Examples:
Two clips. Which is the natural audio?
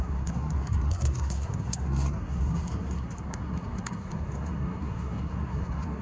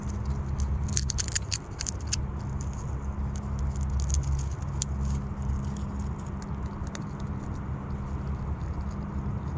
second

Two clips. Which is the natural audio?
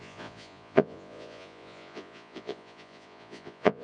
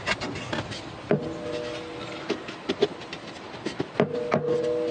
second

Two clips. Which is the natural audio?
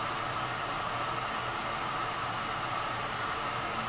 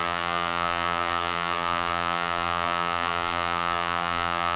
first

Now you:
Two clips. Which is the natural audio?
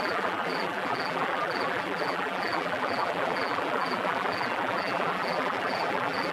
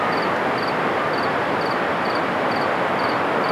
second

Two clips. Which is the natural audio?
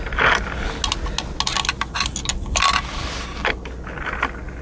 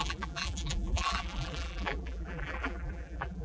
first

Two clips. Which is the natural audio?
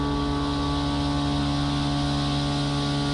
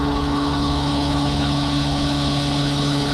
first